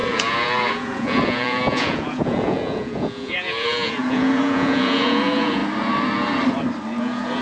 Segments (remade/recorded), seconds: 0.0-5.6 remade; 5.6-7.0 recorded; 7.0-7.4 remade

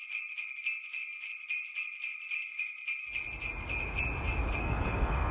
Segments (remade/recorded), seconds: 0.0-4.6 recorded; 4.6-5.3 remade

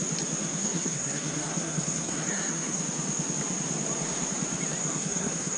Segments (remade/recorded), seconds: 0.0-0.4 recorded; 0.4-2.8 remade; 2.8-4.8 recorded; 4.8-5.6 remade

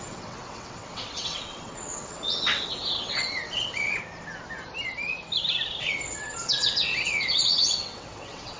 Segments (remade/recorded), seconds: 0.0-4.0 remade; 4.0-5.8 recorded; 5.8-8.6 remade